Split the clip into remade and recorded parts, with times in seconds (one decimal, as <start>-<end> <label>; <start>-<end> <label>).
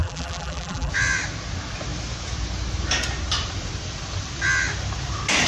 0.0-0.9 remade; 0.9-5.5 recorded